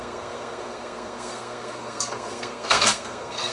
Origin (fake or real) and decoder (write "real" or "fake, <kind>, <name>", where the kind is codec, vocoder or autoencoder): fake, codec, SNAC